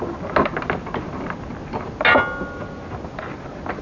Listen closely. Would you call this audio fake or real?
real